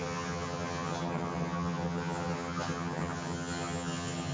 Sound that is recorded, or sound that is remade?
remade